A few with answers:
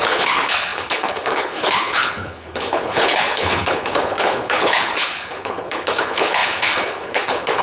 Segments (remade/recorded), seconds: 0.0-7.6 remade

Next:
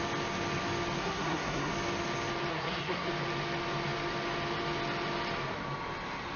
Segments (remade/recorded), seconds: 0.0-1.0 recorded; 1.0-1.7 remade; 1.7-2.5 recorded; 2.5-3.1 remade; 3.1-6.4 recorded

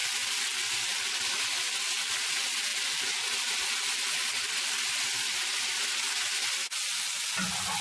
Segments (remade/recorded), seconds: 0.0-7.8 recorded

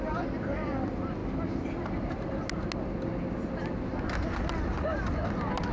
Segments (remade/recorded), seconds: 0.0-5.7 recorded